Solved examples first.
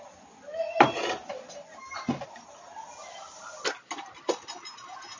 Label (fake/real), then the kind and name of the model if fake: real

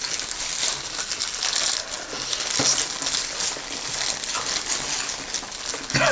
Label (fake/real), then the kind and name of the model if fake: real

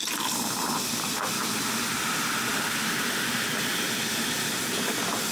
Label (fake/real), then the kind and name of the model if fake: real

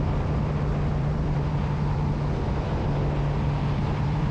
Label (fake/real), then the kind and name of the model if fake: fake, vocoder, BigVGAN v2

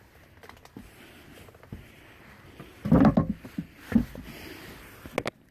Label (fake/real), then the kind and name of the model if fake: real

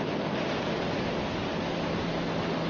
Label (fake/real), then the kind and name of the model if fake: real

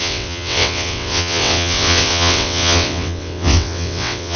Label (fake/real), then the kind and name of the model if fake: fake, vocoder, WaveNeXt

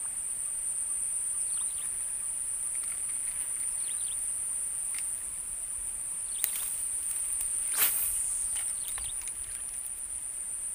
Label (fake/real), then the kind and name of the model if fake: real